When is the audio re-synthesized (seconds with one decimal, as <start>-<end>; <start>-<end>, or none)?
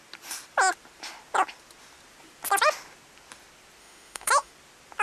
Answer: 3.8-4.5